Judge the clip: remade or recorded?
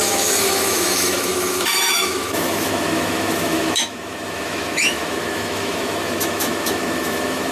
remade